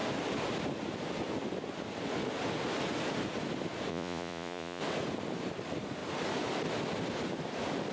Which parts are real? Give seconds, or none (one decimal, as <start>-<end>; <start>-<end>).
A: 0.0-3.9; 4.8-7.9